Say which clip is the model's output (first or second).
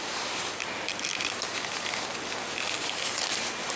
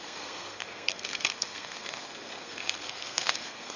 second